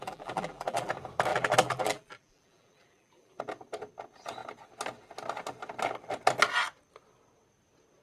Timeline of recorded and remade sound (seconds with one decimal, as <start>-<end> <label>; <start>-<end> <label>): 0.0-0.9 remade; 0.9-1.3 recorded; 1.3-3.4 remade; 3.4-8.0 recorded